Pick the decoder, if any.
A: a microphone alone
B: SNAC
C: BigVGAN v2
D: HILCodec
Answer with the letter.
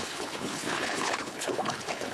D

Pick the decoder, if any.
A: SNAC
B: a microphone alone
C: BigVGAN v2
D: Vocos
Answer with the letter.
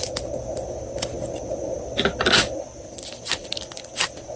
B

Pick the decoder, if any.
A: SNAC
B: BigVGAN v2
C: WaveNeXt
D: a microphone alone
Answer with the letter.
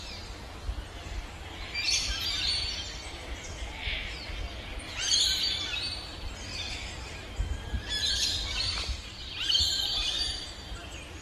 B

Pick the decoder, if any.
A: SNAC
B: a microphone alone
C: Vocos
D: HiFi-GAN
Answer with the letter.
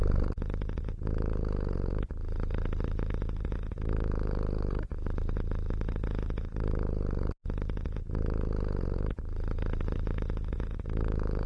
B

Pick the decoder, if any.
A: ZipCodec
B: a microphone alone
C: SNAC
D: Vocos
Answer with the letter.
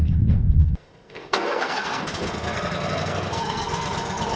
C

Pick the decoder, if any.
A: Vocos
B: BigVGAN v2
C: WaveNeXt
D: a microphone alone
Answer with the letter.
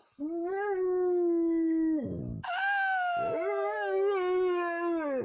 D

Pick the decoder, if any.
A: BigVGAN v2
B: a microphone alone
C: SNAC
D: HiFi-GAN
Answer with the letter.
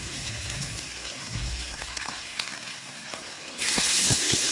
C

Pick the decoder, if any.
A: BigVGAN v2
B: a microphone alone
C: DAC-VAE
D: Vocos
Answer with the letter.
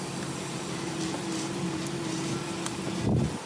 A